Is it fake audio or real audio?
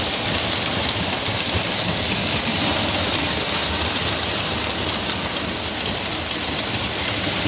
real